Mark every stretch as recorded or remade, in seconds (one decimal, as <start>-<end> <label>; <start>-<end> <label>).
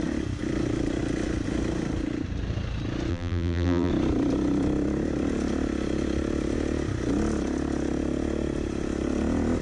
0.0-3.1 recorded; 3.1-3.9 remade; 3.9-9.6 recorded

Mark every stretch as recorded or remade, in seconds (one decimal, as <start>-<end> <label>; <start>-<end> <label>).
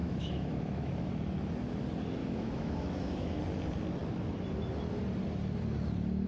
0.0-1.1 remade; 1.1-2.2 recorded; 2.2-3.4 remade; 3.4-6.3 recorded